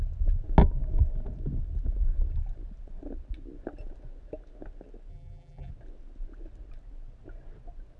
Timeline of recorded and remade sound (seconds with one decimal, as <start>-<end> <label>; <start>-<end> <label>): 0.0-5.1 recorded; 5.1-5.7 remade; 5.7-8.0 recorded